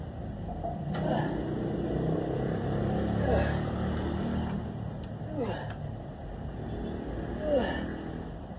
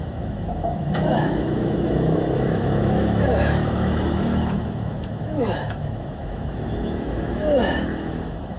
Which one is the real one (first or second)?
first